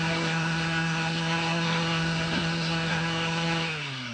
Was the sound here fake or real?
fake